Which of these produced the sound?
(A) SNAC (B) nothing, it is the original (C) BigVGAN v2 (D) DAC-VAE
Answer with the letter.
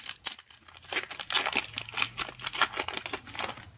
B